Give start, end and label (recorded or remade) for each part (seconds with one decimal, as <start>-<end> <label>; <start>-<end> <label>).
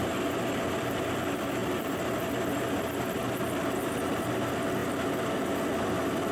0.0-6.3 recorded